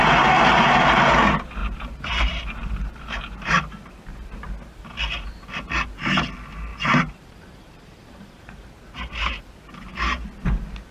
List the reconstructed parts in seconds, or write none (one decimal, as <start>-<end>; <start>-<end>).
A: 1.6-3.5; 6.7-9.4